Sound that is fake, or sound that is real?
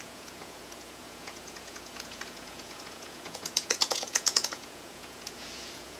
fake